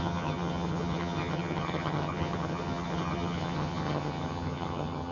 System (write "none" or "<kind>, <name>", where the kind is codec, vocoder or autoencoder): vocoder, HiFi-GAN